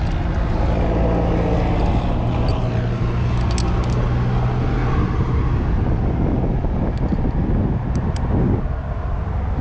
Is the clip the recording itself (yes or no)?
yes